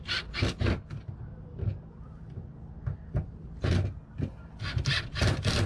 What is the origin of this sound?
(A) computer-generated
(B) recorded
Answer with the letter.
B